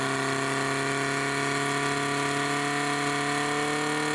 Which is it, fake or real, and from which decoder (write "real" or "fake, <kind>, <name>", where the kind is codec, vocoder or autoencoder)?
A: real